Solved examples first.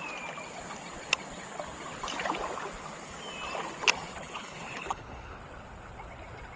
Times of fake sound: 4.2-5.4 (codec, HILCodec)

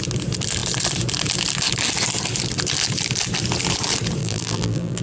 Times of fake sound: 4.2-5.0 (vocoder, BigVGAN v2)

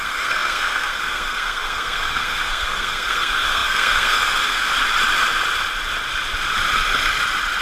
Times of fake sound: 0.0-4.7 (codec, SNAC)

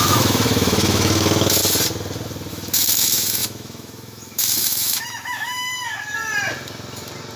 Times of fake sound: 0.0-1.6 (autoencoder, DAC-VAE); 2.5-5.7

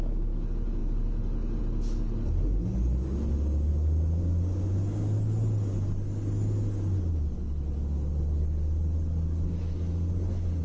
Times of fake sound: none

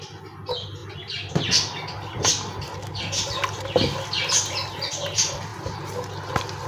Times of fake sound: none

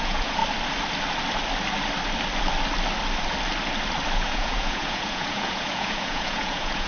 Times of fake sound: 0.0-0.4 (vocoder, Vocos); 4.1-6.9

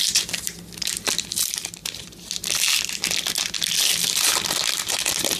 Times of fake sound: none